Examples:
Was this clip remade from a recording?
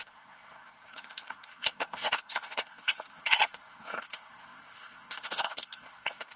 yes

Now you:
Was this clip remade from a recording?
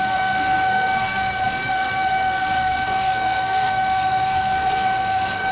yes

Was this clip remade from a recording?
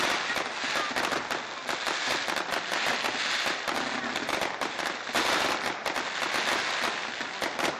no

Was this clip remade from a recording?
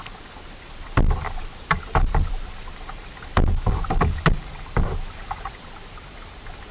no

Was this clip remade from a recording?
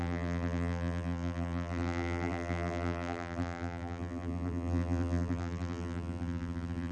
yes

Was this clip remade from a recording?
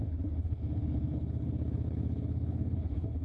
yes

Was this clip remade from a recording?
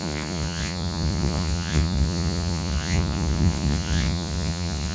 yes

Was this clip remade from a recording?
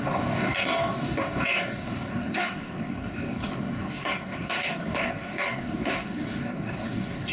yes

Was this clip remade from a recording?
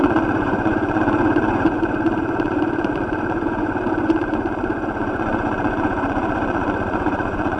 yes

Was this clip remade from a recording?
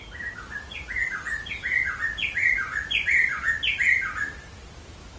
yes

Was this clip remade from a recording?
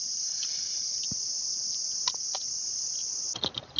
no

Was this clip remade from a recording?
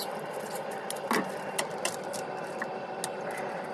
no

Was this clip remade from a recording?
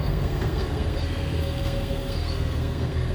yes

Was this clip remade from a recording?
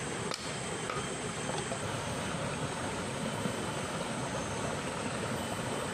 no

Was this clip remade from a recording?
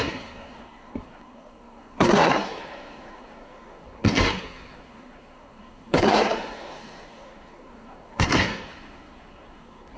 yes